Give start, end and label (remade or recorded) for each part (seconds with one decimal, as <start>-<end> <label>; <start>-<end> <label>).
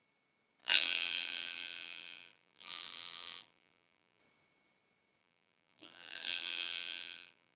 0.0-0.6 recorded; 0.6-4.2 remade; 4.2-5.2 recorded; 5.2-7.6 remade